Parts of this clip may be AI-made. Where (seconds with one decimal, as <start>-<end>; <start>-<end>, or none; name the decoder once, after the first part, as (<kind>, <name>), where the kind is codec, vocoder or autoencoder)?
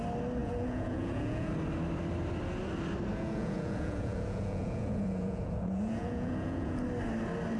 0.4-1.5 (vocoder, Vocos); 3.1-6.8